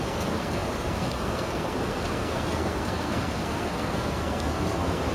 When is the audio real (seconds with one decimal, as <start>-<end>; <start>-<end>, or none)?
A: none